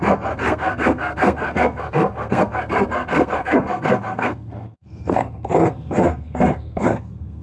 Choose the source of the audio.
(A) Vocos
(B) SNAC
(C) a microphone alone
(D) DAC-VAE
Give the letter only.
B